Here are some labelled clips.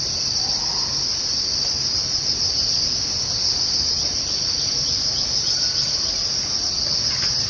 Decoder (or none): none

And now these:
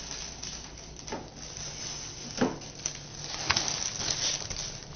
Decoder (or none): none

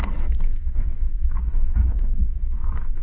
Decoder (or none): codec, SNAC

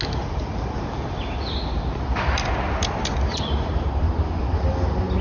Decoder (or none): none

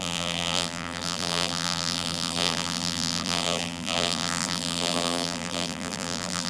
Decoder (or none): vocoder, BigVGAN v2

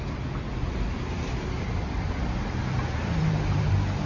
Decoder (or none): vocoder, BigVGAN v2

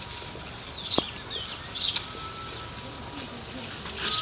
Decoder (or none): none